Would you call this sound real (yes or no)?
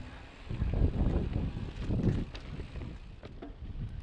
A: yes